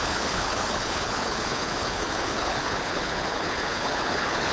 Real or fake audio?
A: fake